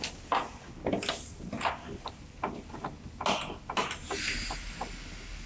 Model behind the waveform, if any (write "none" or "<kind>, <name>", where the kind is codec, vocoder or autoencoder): none